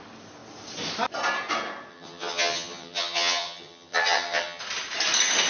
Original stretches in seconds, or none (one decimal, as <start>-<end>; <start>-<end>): 0.0-1.9; 4.6-5.5